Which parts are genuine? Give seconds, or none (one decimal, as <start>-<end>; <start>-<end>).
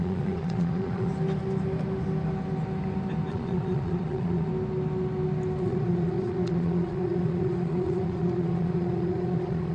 1.1-3.3; 4.5-5.6